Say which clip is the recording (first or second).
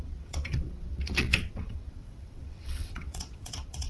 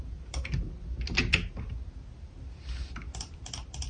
second